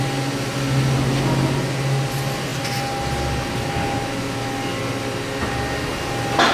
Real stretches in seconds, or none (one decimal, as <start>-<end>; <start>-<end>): 0.0-6.5